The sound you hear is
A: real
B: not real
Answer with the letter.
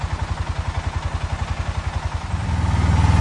A